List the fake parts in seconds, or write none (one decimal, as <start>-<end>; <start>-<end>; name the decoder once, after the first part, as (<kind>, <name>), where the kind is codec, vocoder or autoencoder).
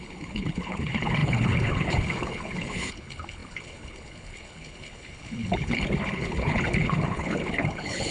0.0-8.1 (codec, HILCodec)